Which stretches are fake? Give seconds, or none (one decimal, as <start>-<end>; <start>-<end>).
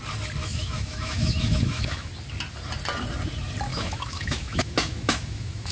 0.4-2.1; 3.7-5.7